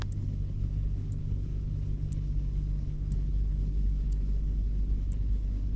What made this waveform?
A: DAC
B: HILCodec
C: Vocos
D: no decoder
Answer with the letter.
B